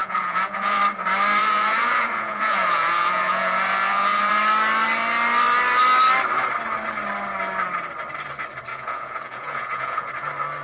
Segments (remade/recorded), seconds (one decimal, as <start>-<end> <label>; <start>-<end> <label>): 0.0-0.8 remade; 0.8-1.4 recorded; 1.4-4.3 remade; 4.3-8.7 recorded; 8.7-10.1 remade; 10.1-10.6 recorded